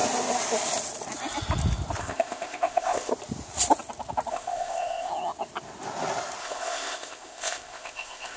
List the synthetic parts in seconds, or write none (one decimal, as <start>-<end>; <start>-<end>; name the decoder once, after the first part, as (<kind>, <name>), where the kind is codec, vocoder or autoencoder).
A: 2.0-3.1 (codec, ZipCodec); 4.3-5.1; 6.4-8.4